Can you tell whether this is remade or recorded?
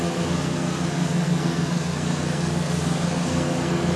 remade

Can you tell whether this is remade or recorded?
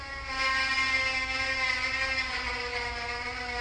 recorded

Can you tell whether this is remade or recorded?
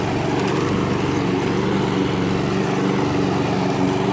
recorded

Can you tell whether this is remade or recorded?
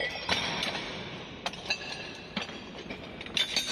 remade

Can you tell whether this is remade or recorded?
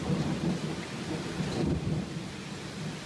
recorded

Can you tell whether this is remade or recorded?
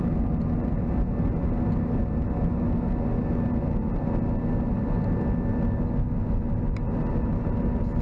recorded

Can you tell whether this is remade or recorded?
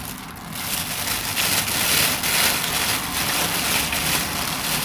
recorded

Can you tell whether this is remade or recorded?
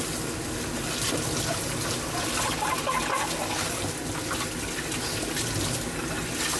recorded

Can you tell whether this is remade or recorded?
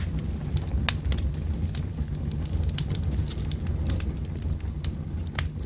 recorded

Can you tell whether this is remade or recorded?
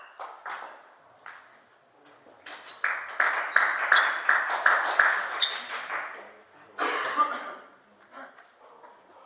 recorded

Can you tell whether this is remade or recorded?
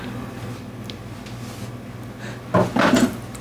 recorded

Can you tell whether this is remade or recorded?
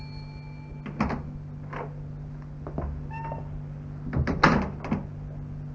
recorded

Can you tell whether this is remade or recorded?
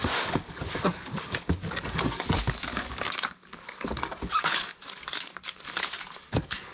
remade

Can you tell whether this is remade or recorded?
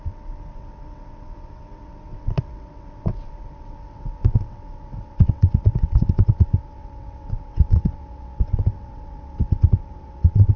remade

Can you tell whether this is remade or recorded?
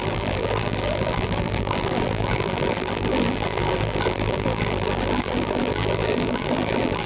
remade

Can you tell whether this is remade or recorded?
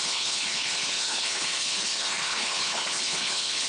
remade